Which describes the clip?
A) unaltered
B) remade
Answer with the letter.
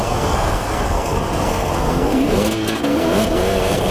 B